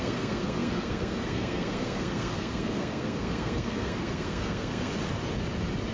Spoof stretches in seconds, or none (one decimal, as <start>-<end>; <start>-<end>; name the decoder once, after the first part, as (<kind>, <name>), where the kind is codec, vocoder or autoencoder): 0.0-4.9 (codec, SNAC)